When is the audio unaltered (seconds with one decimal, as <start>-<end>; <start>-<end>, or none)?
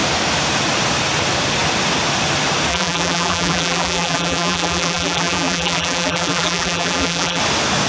0.0-2.7; 7.4-7.9